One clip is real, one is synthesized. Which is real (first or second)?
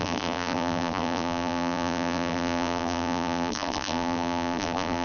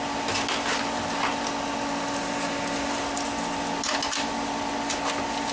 second